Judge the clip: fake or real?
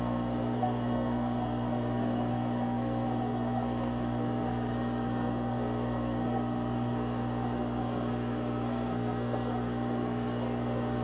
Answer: fake